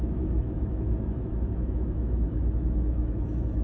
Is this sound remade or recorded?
remade